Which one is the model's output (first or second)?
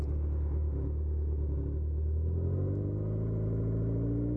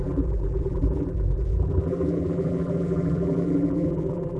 second